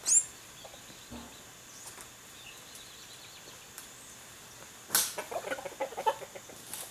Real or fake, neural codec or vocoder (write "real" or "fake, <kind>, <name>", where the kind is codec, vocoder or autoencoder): real